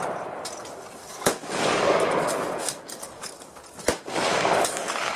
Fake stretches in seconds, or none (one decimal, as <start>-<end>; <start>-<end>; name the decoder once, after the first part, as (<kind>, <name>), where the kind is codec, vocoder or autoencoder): 1.1-3.5 (codec, DAC); 4.3-5.2